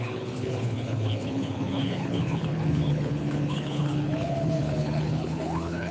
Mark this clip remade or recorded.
remade